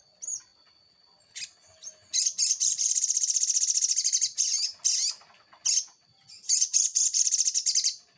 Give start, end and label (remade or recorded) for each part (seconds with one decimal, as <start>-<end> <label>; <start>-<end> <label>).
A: 0.0-6.1 recorded; 6.1-7.3 remade; 7.3-8.2 recorded